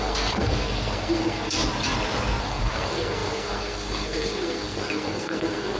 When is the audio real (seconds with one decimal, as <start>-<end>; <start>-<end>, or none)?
1.6-2.4